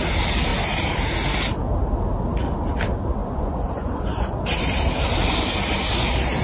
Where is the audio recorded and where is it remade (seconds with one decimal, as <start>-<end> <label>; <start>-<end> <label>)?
0.0-3.2 recorded; 3.2-4.3 remade; 4.3-6.4 recorded